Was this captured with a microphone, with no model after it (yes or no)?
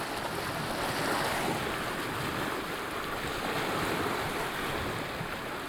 yes